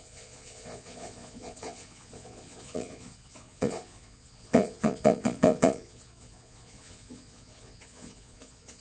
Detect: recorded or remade remade